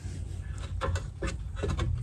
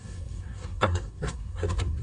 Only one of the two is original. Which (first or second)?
first